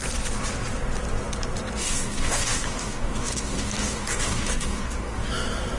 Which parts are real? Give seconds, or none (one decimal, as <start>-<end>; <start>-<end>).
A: 0.0-1.8; 5.3-5.8